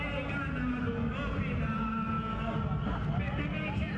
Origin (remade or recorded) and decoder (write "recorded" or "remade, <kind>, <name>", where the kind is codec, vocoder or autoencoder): recorded